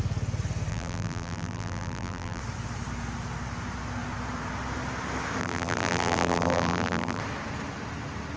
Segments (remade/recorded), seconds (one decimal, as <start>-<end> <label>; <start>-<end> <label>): 0.0-0.7 recorded; 0.7-2.4 remade; 2.4-5.4 recorded; 5.4-7.2 remade; 7.2-8.4 recorded